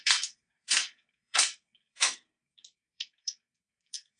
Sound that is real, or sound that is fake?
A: fake